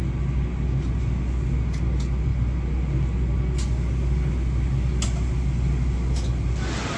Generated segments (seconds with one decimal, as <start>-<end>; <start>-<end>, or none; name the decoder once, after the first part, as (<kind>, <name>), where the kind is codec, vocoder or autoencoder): none